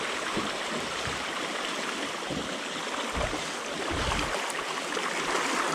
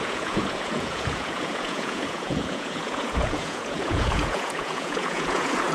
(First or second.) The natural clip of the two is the first